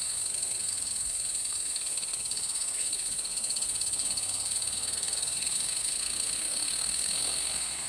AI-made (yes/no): yes